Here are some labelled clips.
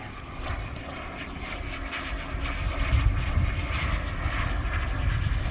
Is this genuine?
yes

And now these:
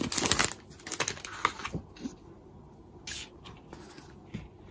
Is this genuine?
yes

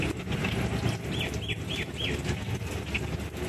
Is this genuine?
yes